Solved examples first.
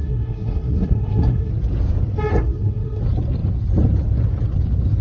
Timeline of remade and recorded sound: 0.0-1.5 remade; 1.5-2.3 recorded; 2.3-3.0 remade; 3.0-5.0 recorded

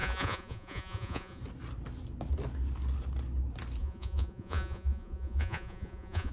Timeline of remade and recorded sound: 0.0-1.4 remade; 1.4-3.8 recorded; 3.8-6.3 remade

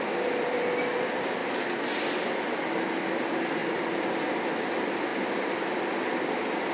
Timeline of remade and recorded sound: 0.0-2.5 recorded; 2.5-3.0 remade; 3.0-6.7 recorded